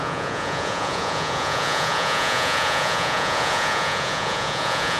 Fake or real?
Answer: fake